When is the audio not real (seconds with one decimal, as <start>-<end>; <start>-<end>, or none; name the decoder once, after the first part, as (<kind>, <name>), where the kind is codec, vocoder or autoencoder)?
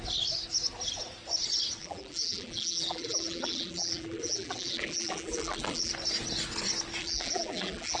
1.8-5.9 (vocoder, BigVGAN v2); 7.0-8.0